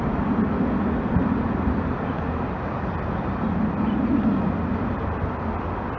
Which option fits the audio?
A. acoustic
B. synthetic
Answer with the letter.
A